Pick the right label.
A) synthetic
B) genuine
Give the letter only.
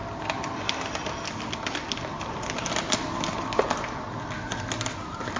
B